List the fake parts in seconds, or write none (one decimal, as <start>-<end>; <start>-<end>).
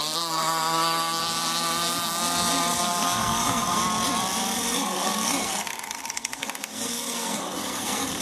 0.0-1.2; 2.8-3.8; 4.6-8.2